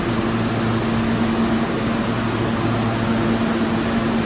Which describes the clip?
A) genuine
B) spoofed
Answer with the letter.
A